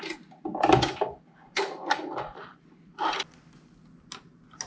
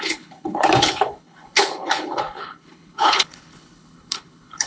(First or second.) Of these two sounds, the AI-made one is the second